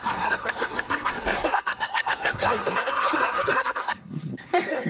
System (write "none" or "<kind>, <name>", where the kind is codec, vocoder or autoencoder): codec, SNAC